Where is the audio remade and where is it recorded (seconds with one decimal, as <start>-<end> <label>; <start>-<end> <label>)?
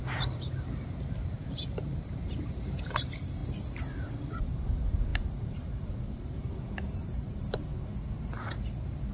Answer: 0.0-3.4 remade; 3.4-4.4 recorded; 4.4-7.7 remade; 7.7-8.5 recorded; 8.5-9.1 remade